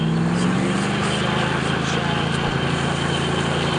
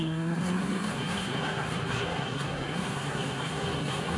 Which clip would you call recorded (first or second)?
first